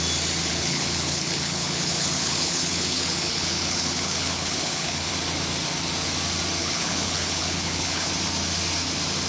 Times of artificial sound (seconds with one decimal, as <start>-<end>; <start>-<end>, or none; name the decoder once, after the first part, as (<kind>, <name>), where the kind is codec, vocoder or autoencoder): 0.5-5.1 (codec, HILCodec); 6.6-8.1